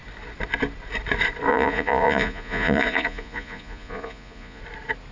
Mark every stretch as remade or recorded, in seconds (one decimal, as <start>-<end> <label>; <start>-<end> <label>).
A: 0.0-1.5 recorded; 1.5-4.6 remade; 4.6-5.1 recorded